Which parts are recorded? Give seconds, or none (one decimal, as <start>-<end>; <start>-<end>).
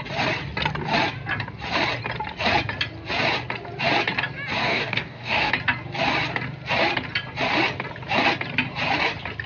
0.0-4.6; 5.5-9.5